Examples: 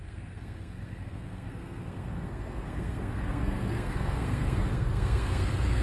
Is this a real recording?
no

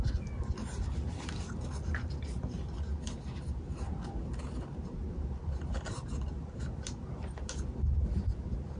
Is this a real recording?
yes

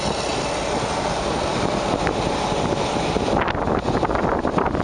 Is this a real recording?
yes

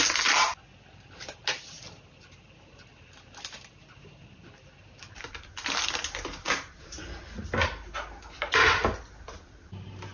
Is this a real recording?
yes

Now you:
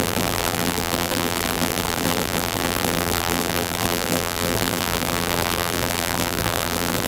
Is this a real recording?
no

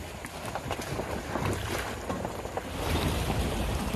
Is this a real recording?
no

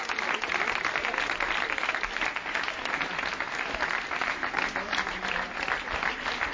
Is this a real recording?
yes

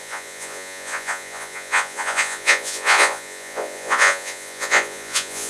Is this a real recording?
no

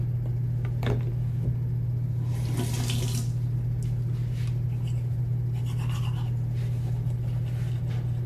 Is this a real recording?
yes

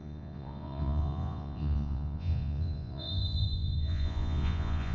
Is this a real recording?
no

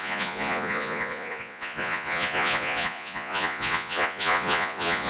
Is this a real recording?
no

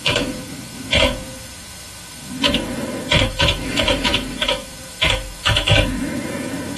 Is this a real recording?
no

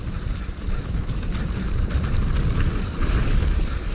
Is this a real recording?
yes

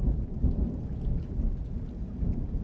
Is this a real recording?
yes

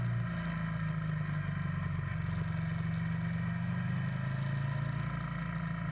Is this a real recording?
yes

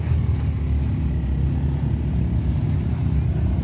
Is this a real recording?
yes